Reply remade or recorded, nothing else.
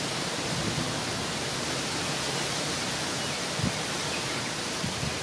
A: recorded